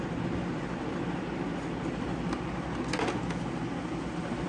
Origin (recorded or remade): recorded